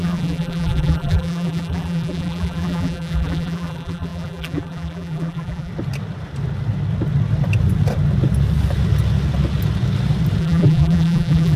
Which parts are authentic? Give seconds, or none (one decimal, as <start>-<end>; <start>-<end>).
5.7-10.4